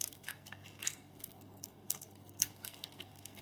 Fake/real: fake